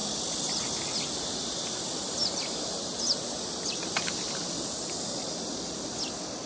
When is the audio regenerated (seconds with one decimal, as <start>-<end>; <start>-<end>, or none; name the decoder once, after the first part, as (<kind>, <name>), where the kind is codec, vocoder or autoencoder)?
none